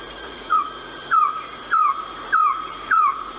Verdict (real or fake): fake